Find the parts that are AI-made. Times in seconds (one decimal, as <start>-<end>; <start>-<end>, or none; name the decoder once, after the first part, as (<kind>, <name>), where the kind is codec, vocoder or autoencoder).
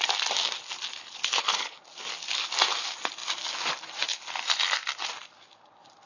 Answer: 1.0-1.8 (codec, HILCodec)